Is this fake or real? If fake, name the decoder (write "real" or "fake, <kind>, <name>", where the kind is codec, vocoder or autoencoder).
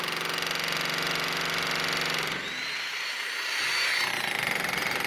real